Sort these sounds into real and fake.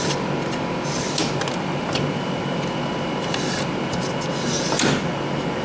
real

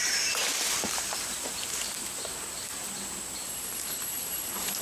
fake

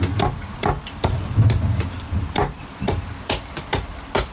fake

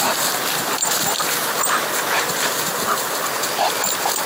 fake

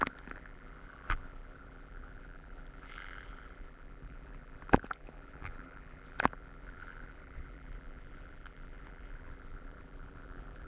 fake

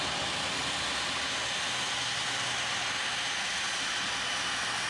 real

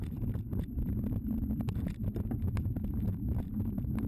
fake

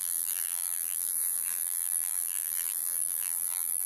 fake